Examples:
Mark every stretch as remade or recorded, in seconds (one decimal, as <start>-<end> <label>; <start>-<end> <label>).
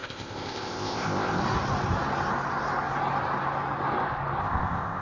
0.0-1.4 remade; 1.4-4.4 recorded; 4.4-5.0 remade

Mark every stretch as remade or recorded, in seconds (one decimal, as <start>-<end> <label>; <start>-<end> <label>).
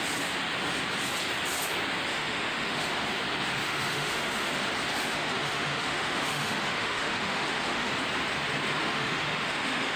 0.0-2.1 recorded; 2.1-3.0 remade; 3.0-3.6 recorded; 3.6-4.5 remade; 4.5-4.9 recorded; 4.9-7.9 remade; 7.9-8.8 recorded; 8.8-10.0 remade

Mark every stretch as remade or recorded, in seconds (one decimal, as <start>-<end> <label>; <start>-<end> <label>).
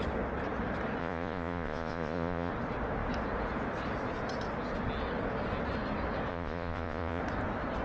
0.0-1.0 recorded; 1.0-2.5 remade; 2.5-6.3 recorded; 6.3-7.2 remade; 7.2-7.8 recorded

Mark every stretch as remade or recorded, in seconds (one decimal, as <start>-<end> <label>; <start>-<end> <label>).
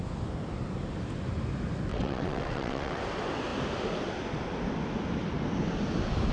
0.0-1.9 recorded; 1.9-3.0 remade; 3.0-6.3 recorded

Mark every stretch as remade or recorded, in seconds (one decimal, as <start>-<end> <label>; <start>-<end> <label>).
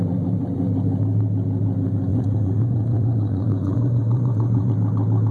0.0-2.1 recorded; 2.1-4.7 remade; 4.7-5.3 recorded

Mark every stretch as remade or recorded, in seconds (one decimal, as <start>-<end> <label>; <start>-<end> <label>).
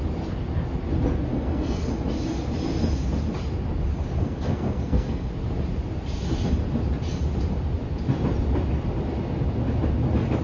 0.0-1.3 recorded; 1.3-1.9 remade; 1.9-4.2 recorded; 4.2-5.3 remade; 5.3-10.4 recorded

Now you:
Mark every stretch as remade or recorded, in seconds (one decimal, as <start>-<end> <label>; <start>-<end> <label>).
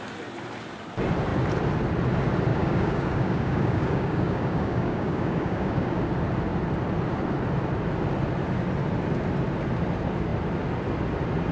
0.0-2.5 recorded; 2.5-6.0 remade; 6.0-11.5 recorded